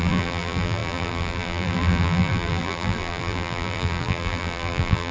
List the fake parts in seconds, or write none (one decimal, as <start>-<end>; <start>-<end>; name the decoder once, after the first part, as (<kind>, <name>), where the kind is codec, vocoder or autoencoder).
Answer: 0.0-5.1 (vocoder, BigVGAN v2)